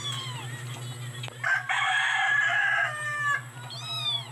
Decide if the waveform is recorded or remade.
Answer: recorded